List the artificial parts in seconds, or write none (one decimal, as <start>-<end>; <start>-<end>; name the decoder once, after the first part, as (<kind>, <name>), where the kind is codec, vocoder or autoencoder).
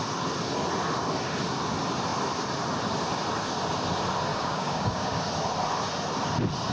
4.3-5.2 (codec, DAC)